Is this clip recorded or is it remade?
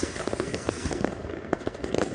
remade